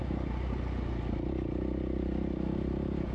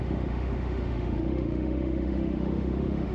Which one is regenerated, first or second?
second